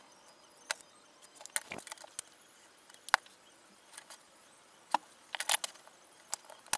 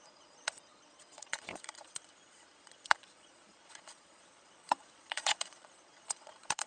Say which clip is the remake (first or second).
second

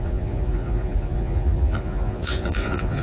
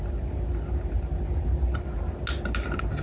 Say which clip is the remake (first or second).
first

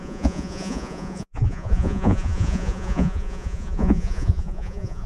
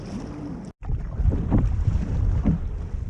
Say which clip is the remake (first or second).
first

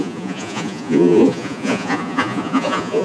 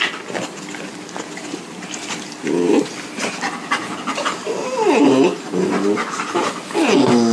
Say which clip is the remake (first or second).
first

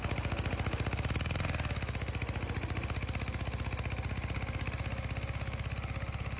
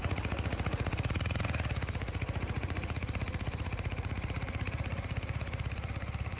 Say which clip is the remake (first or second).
second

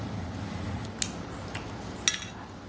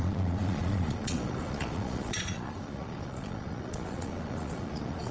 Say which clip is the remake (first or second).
second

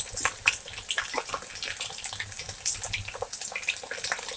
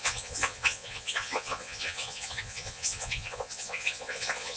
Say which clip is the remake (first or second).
second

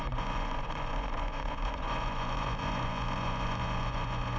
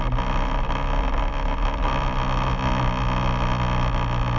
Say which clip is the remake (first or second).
first